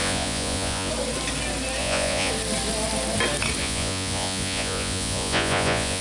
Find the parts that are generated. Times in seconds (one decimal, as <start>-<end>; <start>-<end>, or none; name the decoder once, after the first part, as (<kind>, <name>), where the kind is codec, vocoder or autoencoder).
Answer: 0.0-0.9 (vocoder, Vocos); 1.8-2.3; 3.6-6.0